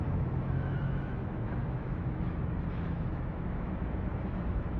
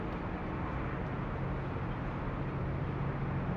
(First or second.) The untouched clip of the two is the second